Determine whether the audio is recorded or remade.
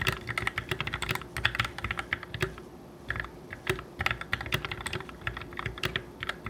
recorded